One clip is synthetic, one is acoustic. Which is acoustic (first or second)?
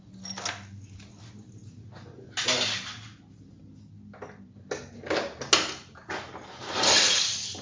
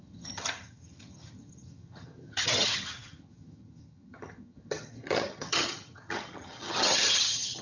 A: first